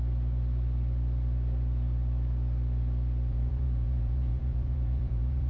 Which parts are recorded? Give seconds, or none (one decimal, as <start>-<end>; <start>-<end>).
0.0-3.3